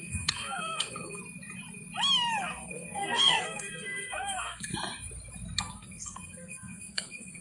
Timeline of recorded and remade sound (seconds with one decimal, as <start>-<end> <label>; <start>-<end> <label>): 0.0-1.2 remade; 1.2-2.4 recorded; 2.4-4.7 remade; 4.7-5.6 recorded; 5.6-7.4 remade